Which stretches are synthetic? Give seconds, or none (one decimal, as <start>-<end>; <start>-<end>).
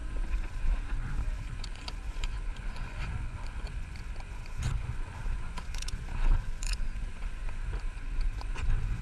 0.0-9.0